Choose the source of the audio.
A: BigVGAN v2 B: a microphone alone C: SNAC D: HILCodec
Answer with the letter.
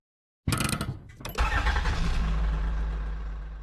B